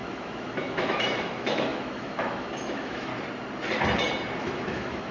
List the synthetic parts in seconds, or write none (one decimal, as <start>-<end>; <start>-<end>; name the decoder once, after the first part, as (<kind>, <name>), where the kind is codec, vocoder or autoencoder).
0.0-3.1 (autoencoder, DAC-VAE); 4.4-5.1